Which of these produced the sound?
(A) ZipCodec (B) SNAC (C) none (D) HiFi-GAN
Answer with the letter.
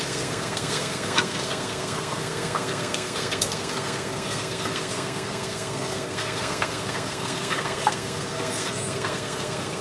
B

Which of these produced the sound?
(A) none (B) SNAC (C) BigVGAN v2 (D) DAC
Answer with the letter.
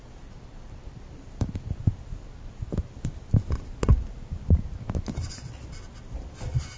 A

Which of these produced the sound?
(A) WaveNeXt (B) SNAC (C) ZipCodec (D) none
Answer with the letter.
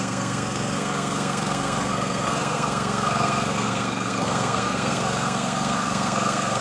B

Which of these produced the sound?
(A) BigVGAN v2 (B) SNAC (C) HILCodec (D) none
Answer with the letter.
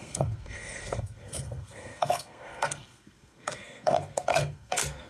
B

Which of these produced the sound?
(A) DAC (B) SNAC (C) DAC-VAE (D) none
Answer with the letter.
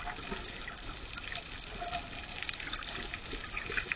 D